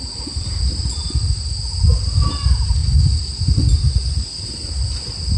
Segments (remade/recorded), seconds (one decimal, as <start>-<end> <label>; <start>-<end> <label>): 0.0-5.4 recorded